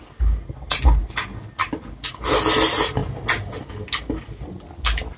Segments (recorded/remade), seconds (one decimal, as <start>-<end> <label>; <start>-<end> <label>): 0.0-5.2 recorded